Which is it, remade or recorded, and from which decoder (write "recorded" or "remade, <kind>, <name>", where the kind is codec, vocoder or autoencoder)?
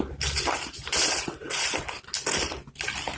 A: recorded